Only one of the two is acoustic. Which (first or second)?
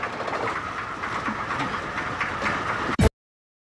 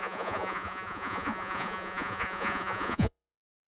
first